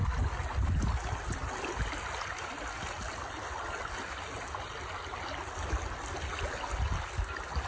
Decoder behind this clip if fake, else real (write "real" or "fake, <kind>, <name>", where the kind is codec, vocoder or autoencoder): real